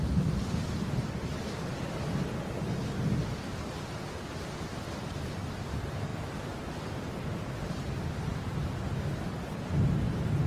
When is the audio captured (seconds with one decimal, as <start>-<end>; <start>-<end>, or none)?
1.3-4.4; 6.1-6.9; 8.3-10.5